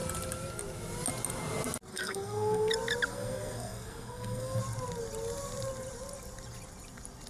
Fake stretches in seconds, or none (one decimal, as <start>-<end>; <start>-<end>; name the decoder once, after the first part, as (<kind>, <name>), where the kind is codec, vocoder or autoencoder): 1.9-2.7 (codec, SNAC); 3.1-4.6